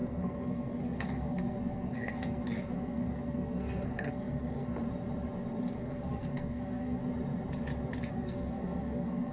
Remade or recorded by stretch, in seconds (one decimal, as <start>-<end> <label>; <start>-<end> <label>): 0.0-4.8 remade; 4.8-5.7 recorded; 5.7-7.0 remade; 7.0-8.1 recorded; 8.1-9.3 remade